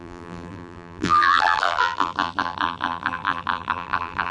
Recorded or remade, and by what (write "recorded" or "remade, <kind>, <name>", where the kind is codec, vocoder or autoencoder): remade, vocoder, BigVGAN v2